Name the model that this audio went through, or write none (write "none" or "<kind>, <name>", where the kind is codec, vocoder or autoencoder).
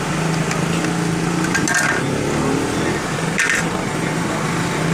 none